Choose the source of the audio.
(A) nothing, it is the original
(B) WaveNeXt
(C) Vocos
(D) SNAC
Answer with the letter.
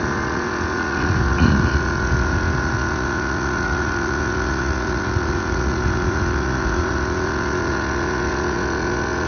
C